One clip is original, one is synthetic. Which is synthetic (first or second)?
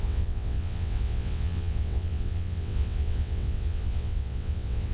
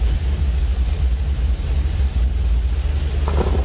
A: first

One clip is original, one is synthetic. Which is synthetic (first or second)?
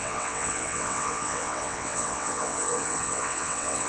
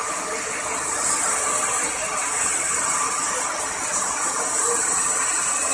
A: first